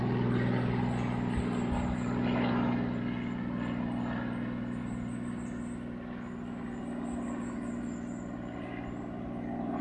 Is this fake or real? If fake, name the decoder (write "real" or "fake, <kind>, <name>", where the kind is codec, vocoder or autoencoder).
real